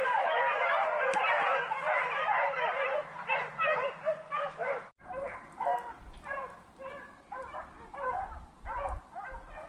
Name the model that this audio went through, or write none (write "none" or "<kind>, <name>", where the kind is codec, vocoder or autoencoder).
none